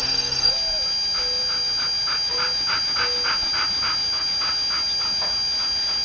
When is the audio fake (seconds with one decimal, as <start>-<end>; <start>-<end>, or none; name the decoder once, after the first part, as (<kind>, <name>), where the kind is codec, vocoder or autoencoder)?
0.0-0.5 (codec, DAC)